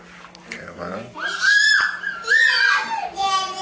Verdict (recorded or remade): recorded